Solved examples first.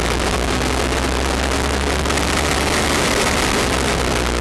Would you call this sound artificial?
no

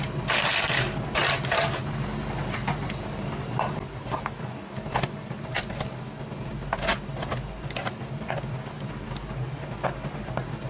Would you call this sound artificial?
no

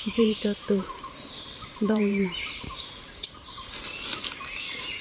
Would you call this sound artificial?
yes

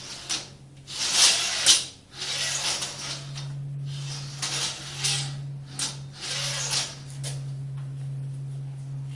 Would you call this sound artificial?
no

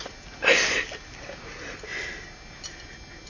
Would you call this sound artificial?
no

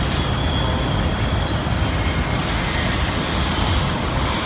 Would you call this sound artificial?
no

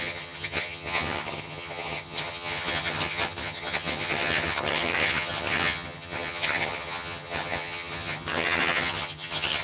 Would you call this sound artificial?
yes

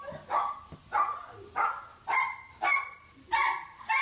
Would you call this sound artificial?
no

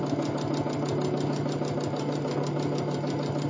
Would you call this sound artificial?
no